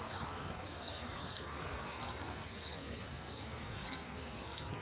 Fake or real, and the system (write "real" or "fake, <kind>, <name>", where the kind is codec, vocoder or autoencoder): fake, codec, SNAC